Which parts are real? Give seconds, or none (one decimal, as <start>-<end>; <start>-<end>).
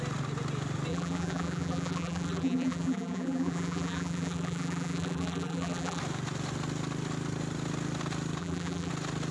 0.0-0.9; 6.0-8.4; 8.9-9.3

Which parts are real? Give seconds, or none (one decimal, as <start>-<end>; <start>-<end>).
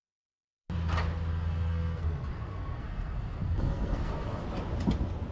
0.0-1.3; 4.4-5.3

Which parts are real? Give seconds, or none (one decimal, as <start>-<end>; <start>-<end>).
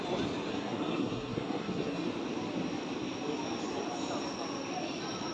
0.0-0.5; 2.1-5.3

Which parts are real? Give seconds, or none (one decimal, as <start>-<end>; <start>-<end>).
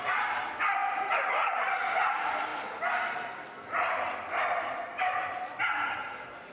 0.0-6.5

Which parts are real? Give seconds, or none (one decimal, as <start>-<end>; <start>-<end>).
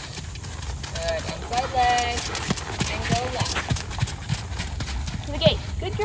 0.0-6.0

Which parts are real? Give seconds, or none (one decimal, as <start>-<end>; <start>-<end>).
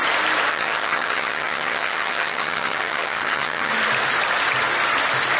0.0-0.5; 3.7-5.4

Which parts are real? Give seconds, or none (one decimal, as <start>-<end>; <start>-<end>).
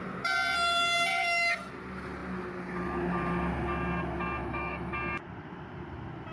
0.0-1.1; 1.7-4.4; 4.9-6.3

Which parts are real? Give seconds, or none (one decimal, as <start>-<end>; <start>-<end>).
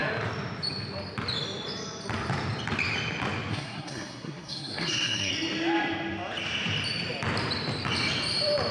0.0-3.5; 5.3-8.7